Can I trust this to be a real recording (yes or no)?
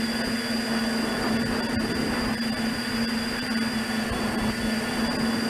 yes